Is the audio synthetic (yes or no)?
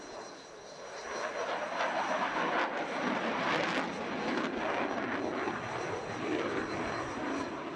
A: no